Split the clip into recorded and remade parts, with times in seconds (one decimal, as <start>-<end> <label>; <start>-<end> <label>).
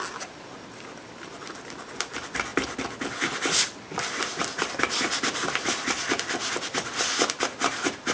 0.0-8.1 recorded